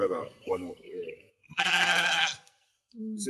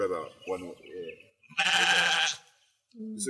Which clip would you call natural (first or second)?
second